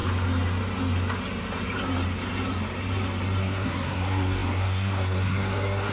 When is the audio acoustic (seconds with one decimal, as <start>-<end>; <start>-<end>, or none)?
0.0-3.4